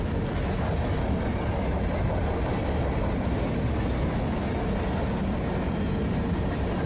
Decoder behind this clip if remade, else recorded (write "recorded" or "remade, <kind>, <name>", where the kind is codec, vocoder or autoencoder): recorded